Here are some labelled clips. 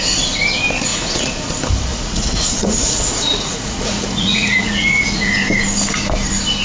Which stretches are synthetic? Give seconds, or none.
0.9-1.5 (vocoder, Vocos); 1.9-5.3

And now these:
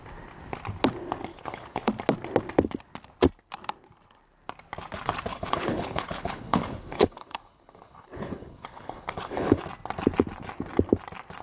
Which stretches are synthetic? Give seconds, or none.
1.3-1.9 (codec, HILCodec); 5.3-9.6

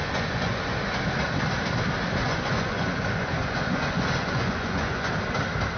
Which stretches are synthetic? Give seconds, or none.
0.0-1.0 (vocoder, Vocos); 2.2-5.1

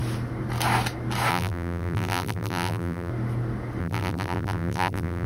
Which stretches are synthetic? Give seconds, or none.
1.3-3.1 (vocoder, BigVGAN v2); 3.8-5.3

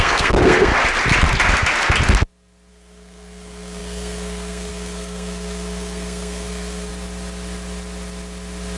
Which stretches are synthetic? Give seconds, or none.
0.0-0.7 (codec, SNAC); 2.7-6.9

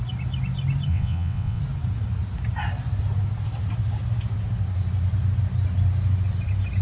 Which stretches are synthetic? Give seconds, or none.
0.9-1.6 (vocoder, WaveNeXt)

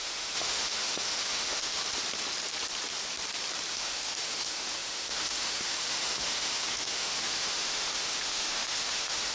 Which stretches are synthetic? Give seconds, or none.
0.0-1.8 (autoencoder, DAC-VAE); 3.7-9.3

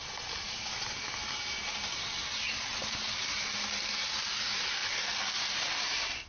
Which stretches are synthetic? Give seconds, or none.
4.8-6.3 (vocoder, BigVGAN v2)